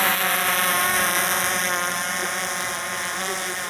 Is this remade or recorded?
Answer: recorded